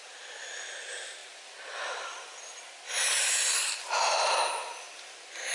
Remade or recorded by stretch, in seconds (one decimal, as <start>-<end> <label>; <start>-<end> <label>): 0.0-5.5 recorded